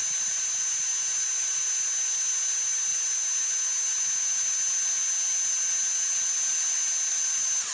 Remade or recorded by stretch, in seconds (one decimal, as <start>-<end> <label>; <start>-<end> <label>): 0.0-7.7 recorded

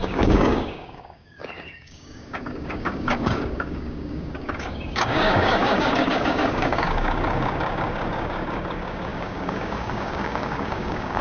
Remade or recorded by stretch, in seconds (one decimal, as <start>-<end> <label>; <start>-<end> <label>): 0.0-11.2 remade

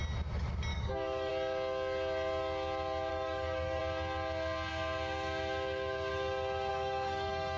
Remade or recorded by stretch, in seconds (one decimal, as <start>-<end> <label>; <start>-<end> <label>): 0.0-0.7 recorded; 0.7-1.3 remade; 1.3-3.1 recorded; 3.1-3.8 remade; 3.8-6.7 recorded; 6.7-7.6 remade

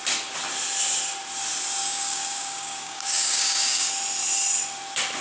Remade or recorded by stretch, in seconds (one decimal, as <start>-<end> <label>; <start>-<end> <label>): 0.0-1.8 recorded; 1.8-3.9 remade; 3.9-5.2 recorded

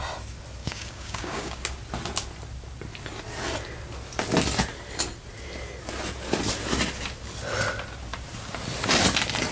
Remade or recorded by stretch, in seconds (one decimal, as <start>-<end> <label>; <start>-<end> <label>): 0.0-0.6 recorded; 0.6-1.6 remade; 1.6-9.5 recorded

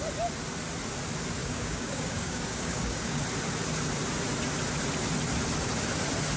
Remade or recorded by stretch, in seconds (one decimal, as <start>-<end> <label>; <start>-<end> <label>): 0.0-1.4 recorded; 1.4-3.2 remade; 3.2-6.4 recorded